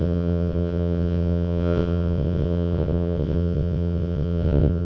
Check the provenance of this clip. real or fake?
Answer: fake